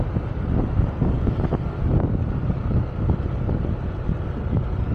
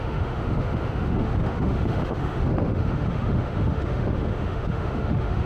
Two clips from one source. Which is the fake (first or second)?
second